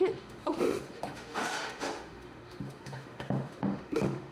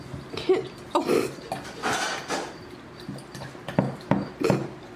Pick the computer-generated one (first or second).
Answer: first